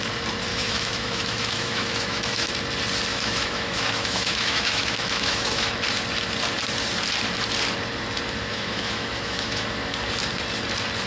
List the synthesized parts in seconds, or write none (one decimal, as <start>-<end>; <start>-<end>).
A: 0.5-2.5; 3.1-5.7; 8.5-9.7